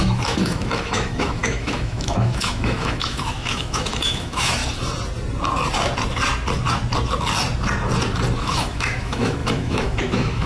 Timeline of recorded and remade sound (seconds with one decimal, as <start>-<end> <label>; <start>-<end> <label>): 0.0-4.6 remade; 4.6-8.4 recorded; 8.4-10.5 remade